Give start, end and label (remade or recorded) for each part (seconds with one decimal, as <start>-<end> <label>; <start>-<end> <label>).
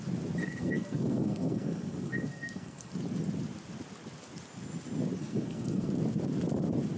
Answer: 0.0-0.4 recorded; 0.4-2.9 remade; 2.9-5.2 recorded; 5.2-5.9 remade; 5.9-7.0 recorded